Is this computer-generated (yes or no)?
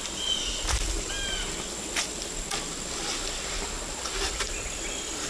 no